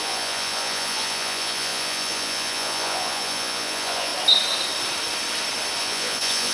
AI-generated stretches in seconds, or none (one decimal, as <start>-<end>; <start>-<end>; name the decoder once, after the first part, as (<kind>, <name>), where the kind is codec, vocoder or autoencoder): 0.0-4.1 (vocoder, Vocos); 5.8-6.5